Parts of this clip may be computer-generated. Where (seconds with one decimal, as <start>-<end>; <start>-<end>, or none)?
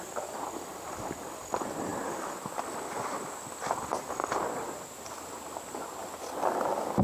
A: none